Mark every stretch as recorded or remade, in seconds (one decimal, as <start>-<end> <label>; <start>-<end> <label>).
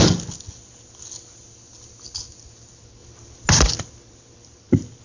0.0-5.0 recorded